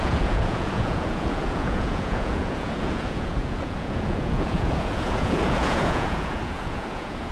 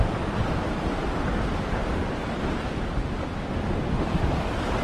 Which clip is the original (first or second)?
second